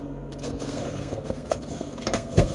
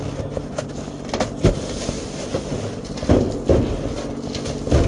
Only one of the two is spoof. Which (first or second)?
first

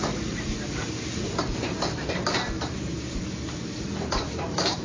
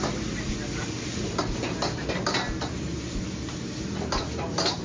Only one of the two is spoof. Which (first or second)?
first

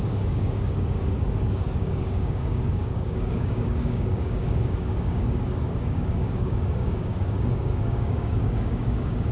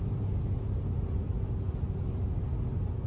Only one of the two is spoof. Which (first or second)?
first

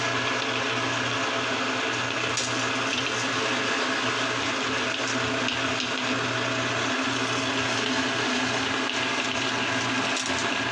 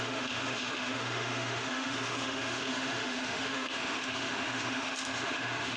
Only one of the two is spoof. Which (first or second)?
second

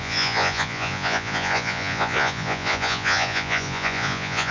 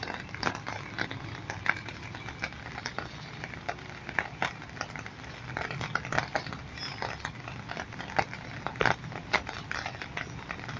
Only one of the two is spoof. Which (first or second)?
first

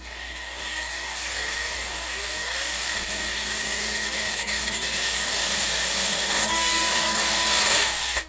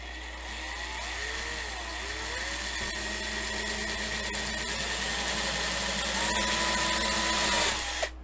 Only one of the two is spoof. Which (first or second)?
first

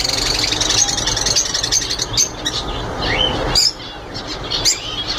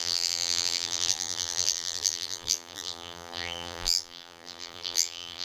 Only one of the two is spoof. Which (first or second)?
second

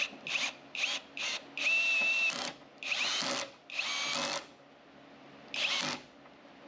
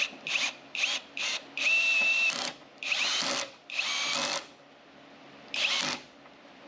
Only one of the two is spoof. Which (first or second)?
second